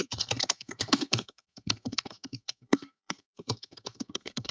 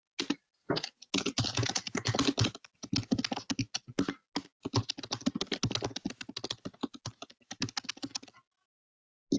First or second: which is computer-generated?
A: first